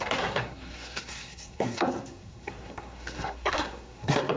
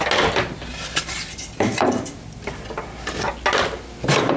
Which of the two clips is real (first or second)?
second